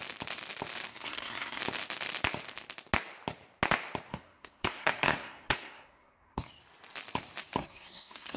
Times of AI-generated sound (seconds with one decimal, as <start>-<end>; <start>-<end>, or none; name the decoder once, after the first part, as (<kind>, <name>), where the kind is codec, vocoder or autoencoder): 0.9-1.6 (codec, SNAC); 4.1-6.5; 7.6-8.4